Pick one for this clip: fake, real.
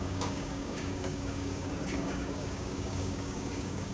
fake